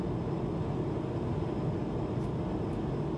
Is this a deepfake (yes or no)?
no